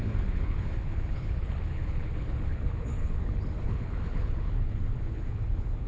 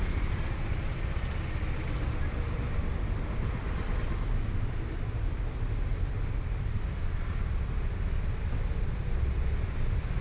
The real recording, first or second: second